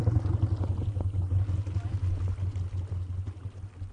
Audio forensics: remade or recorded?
recorded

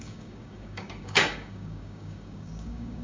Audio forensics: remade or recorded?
remade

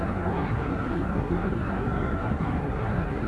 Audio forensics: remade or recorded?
remade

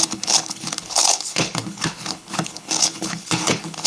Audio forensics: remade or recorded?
remade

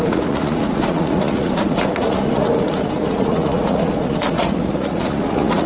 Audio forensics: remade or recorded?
remade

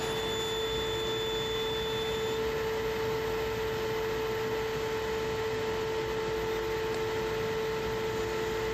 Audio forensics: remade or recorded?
recorded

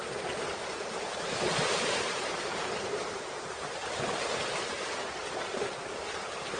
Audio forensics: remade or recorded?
remade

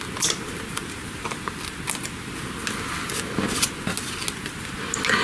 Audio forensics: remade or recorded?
recorded